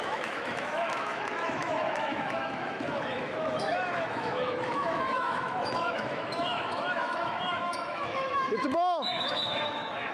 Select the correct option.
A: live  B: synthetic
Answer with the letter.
B